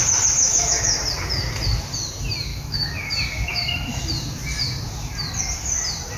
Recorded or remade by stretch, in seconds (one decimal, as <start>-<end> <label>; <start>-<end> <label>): 0.0-0.4 recorded; 0.4-1.0 remade; 1.0-2.5 recorded; 2.5-3.1 remade; 3.1-3.5 recorded; 3.5-4.0 remade; 4.0-6.2 recorded